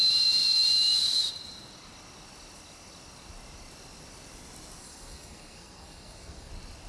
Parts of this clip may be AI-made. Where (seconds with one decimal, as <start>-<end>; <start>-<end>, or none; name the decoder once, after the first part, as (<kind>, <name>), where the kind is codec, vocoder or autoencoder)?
4.8-6.5 (codec, SNAC)